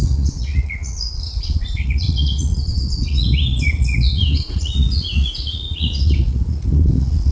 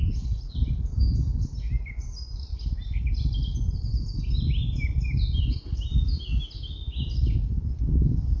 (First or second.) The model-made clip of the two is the first